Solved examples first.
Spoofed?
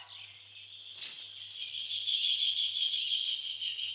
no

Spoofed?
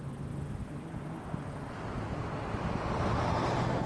no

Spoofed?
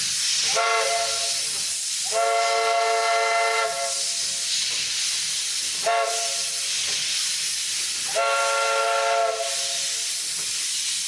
no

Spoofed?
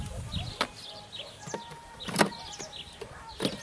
no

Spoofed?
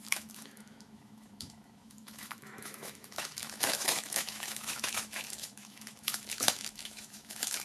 yes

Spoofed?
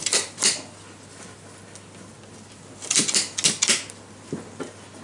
no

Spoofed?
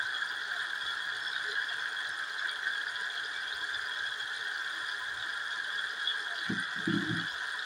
no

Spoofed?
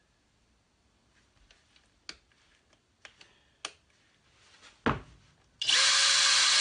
no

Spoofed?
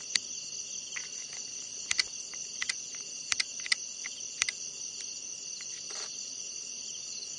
no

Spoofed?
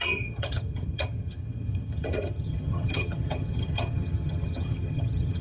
yes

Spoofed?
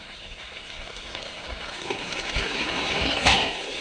yes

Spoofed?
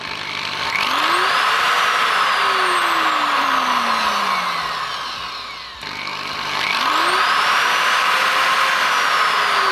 yes